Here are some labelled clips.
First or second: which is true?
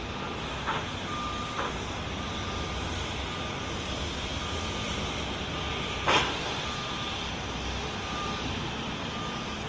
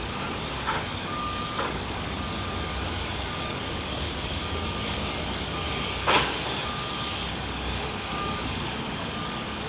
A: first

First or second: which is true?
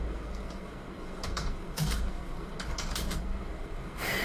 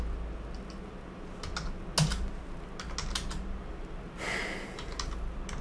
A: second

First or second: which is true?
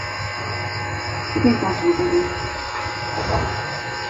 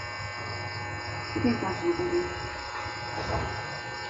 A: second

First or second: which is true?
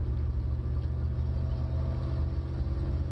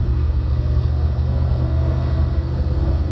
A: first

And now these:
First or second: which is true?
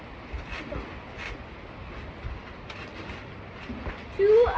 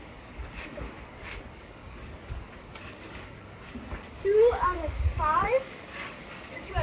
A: first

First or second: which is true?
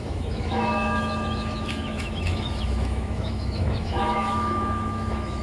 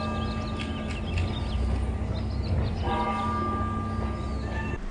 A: second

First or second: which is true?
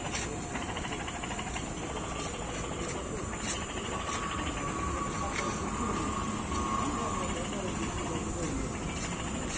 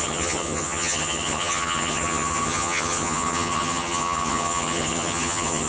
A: first